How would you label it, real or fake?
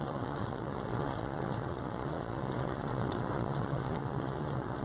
fake